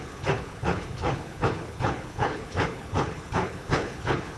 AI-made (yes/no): yes